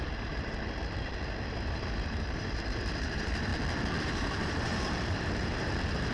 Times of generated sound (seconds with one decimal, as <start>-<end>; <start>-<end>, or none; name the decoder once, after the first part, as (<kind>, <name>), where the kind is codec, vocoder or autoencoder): 0.0-0.5 (vocoder, BigVGAN v2); 1.5-3.5; 4.0-6.1